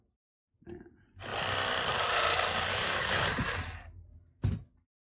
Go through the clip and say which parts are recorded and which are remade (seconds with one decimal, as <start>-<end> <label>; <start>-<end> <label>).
0.0-2.7 recorded; 2.7-3.2 remade; 3.2-5.2 recorded